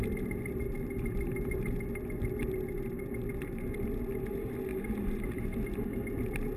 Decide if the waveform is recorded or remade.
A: recorded